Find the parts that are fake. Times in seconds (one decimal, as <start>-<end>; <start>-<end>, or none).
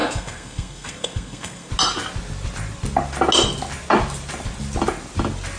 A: 0.0-1.7